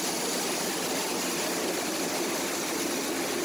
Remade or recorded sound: recorded